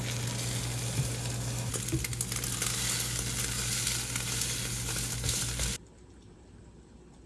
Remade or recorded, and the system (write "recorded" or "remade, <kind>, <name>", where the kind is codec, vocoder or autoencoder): recorded